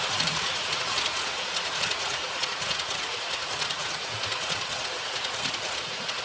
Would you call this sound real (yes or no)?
no